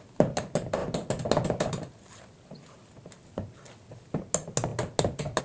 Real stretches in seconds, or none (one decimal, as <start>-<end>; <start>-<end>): 0.0-5.4